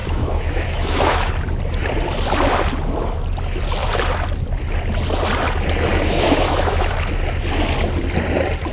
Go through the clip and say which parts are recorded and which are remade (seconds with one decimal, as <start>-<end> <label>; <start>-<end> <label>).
0.0-1.3 remade; 1.3-5.9 recorded; 5.9-6.9 remade; 6.9-8.7 recorded